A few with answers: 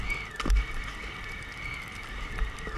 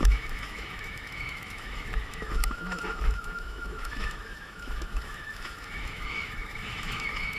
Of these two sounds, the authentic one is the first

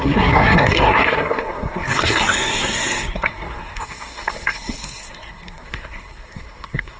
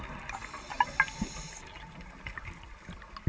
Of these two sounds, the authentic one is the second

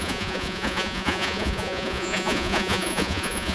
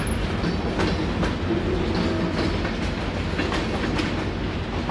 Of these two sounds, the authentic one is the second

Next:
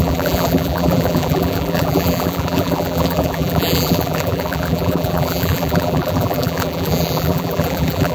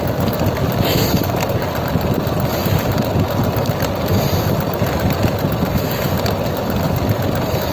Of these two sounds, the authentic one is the second